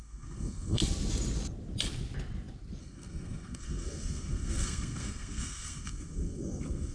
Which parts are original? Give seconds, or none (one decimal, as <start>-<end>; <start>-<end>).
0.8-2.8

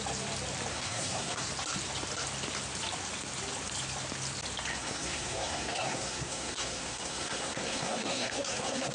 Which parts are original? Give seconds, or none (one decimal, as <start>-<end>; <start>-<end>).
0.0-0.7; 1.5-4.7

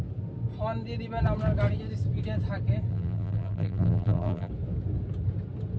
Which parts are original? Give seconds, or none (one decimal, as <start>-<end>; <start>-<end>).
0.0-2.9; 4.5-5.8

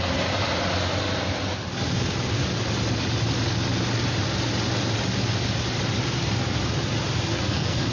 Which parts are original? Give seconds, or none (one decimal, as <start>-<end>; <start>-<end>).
0.0-7.3

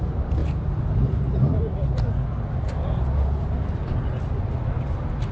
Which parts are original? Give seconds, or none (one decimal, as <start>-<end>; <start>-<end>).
0.0-5.3